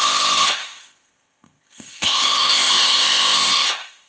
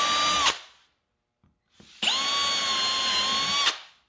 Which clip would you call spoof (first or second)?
first